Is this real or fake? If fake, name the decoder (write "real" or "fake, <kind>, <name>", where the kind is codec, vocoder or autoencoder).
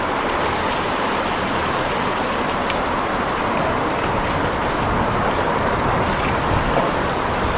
fake, vocoder, BigVGAN v2